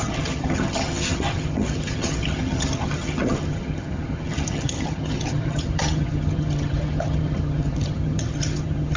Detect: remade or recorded remade